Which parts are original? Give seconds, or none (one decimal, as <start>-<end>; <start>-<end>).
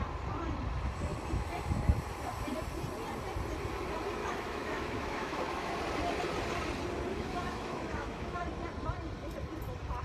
0.0-4.2; 5.7-7.1; 8.4-10.0